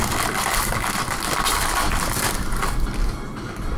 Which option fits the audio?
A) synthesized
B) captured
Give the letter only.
B